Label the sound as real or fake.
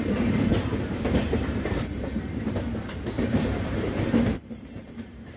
fake